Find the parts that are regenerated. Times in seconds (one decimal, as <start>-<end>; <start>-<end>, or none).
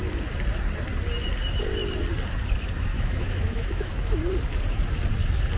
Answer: 2.9-4.2